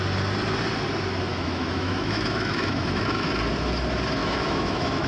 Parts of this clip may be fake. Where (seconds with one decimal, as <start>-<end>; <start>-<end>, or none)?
1.3-3.3; 4.2-5.1